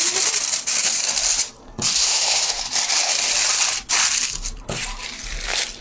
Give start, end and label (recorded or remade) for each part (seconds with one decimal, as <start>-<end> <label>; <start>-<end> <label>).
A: 0.0-2.0 recorded; 2.0-2.6 remade; 2.6-5.8 recorded